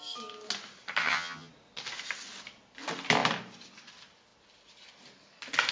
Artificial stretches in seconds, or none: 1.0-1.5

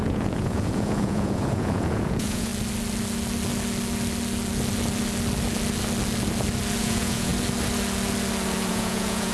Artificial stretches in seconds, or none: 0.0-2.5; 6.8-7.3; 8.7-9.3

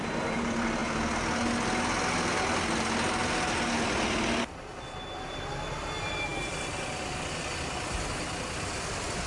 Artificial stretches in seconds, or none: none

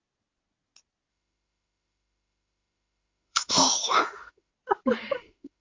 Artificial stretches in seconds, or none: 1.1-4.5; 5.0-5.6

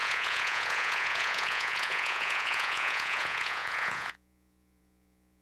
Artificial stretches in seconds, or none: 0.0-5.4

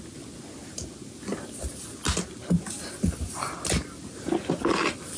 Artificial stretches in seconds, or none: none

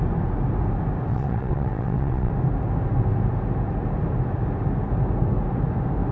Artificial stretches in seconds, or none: 1.1-2.3